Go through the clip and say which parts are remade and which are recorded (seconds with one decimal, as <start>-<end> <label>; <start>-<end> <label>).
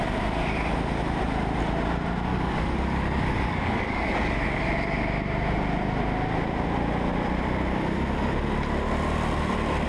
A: 0.0-2.3 recorded; 2.3-4.6 remade; 4.6-9.9 recorded